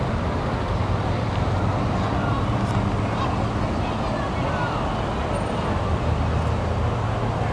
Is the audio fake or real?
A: real